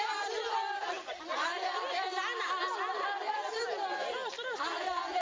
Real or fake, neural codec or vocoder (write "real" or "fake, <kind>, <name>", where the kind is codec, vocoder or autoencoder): real